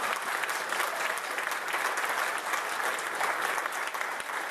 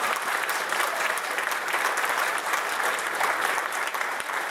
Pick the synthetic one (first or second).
second